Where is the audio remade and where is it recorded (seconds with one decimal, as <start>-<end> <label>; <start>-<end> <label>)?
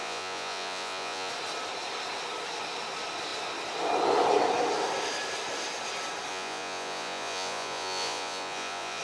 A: 0.0-1.3 remade; 1.3-6.3 recorded; 6.3-9.0 remade